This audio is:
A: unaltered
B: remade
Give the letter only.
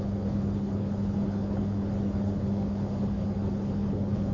B